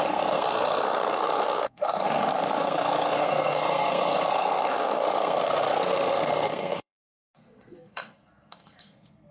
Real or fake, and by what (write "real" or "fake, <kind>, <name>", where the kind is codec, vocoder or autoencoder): fake, codec, SNAC